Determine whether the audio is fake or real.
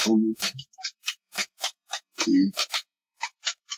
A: fake